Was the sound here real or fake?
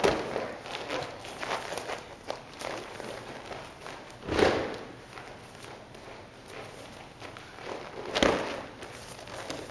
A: real